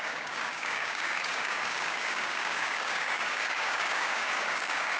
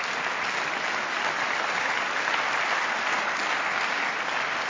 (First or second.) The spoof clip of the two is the first